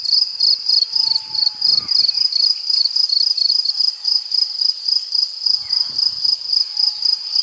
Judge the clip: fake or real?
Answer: real